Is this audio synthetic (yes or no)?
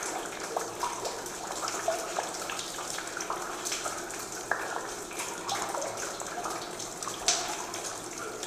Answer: no